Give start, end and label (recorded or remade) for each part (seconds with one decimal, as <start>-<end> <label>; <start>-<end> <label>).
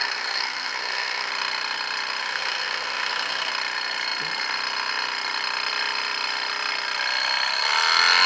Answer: 0.0-1.3 remade; 1.3-2.2 recorded; 2.2-3.5 remade; 3.5-8.3 recorded